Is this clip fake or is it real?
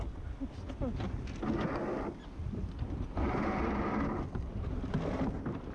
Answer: real